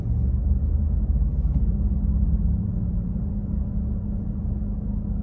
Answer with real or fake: real